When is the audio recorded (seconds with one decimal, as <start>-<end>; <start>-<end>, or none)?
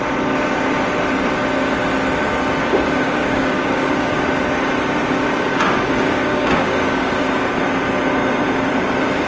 0.0-2.6; 4.2-5.0; 7.1-9.3